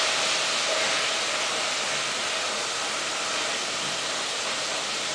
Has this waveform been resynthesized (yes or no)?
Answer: no